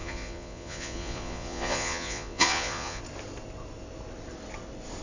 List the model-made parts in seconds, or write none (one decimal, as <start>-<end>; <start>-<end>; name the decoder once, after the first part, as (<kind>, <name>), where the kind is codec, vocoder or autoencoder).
0.0-3.0 (vocoder, Vocos)